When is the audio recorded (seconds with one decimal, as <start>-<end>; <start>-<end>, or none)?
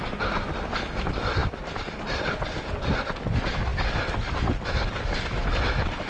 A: 0.0-6.1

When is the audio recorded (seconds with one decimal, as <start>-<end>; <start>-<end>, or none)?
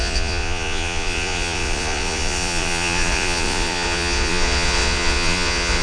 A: none